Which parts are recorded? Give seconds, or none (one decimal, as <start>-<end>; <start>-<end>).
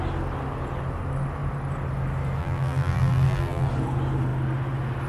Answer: 0.0-2.4; 3.7-5.1